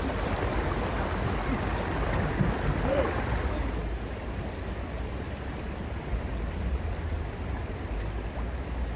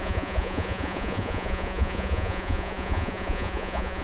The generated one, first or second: second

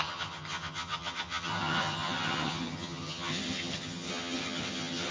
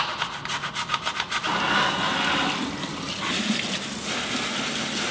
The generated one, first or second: first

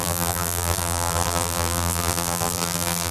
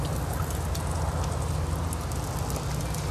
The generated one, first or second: first